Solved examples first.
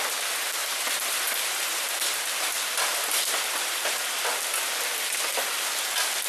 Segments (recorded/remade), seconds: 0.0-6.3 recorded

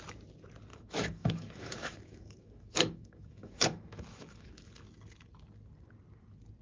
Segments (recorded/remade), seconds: 0.0-0.7 recorded; 0.7-4.7 remade; 4.7-6.6 recorded

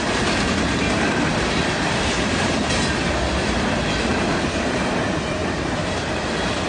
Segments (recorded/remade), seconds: 0.0-0.8 recorded; 0.8-2.5 remade; 2.5-4.1 recorded; 4.1-5.0 remade; 5.0-5.4 recorded; 5.4-6.1 remade; 6.1-6.7 recorded

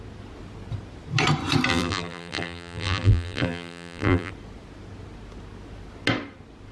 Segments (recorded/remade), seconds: 0.0-1.7 recorded; 1.7-4.3 remade; 4.3-6.7 recorded

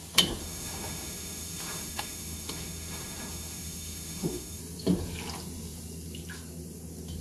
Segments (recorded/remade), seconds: 0.0-0.4 recorded; 0.4-4.6 remade; 4.6-7.2 recorded

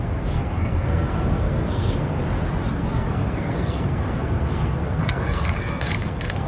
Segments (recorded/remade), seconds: 0.0-2.2 remade; 2.2-2.7 recorded; 2.7-6.5 remade

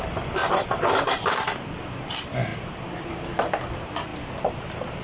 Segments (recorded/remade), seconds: 0.0-0.4 recorded; 0.4-1.8 remade; 1.8-4.1 recorded; 4.1-5.0 remade